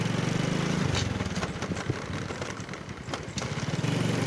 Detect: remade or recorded recorded